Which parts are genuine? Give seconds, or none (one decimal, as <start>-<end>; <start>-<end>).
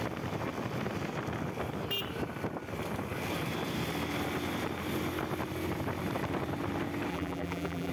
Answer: 0.0-7.1